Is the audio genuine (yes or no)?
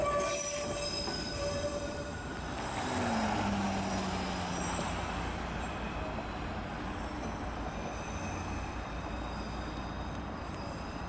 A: yes